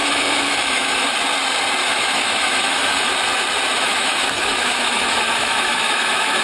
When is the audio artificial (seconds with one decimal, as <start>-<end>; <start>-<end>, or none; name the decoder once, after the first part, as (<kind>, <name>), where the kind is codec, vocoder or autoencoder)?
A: 0.0-1.1 (autoencoder, DAC-VAE); 1.8-3.1; 3.7-6.4